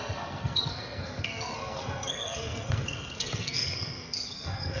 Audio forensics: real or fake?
fake